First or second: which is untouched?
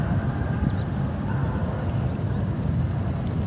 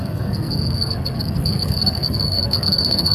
first